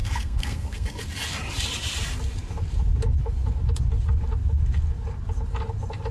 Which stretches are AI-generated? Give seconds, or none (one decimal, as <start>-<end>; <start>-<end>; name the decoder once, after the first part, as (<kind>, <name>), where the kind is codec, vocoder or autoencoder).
0.0-1.0 (codec, SNAC)